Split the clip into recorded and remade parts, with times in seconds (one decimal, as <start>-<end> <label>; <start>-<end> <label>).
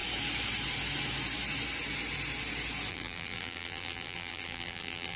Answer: 0.0-2.9 recorded; 2.9-5.2 remade